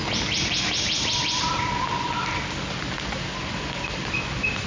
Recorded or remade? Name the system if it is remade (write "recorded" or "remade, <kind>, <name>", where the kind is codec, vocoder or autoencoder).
recorded